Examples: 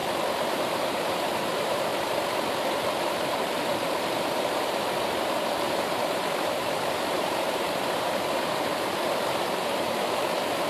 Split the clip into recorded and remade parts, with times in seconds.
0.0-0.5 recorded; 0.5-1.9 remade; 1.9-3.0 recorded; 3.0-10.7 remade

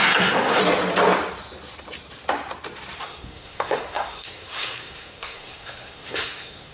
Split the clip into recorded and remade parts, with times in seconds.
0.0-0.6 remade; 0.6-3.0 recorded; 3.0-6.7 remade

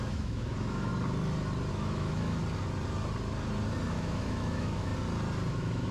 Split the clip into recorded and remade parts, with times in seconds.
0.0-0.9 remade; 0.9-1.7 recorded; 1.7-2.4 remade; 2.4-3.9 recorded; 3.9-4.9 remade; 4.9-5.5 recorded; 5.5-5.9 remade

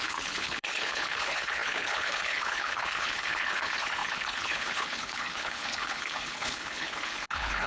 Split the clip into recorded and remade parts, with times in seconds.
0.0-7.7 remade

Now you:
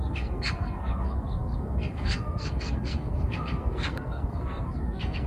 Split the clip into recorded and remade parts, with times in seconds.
0.0-5.3 remade

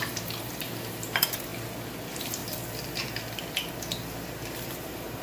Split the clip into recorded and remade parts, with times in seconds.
0.0-1.5 remade; 1.5-2.0 recorded; 2.0-2.4 remade; 2.4-4.7 recorded; 4.7-5.2 remade

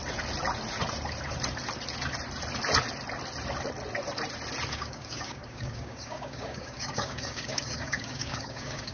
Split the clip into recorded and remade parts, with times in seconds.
0.0-4.7 recorded; 4.7-8.9 remade